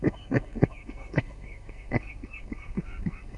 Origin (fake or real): fake